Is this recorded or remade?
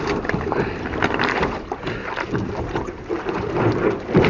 remade